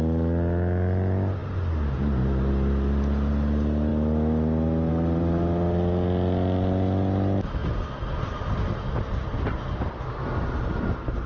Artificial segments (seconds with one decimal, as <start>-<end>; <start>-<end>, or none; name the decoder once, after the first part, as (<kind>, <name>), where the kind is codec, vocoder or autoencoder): none